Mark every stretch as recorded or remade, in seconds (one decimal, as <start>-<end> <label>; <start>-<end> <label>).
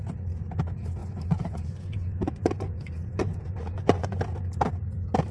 0.0-1.0 recorded; 1.0-4.2 remade; 4.2-5.3 recorded